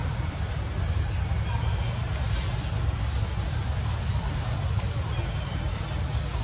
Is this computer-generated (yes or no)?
no